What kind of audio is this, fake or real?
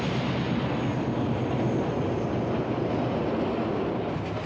real